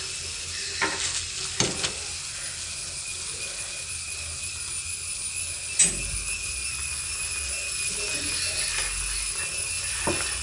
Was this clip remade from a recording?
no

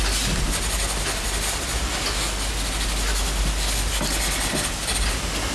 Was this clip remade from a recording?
no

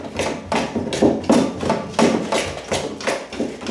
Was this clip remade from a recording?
no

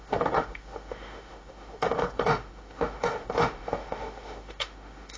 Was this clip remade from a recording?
yes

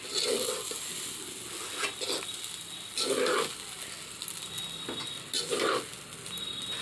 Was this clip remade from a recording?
no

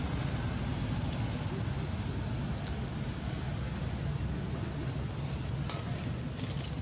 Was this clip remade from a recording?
no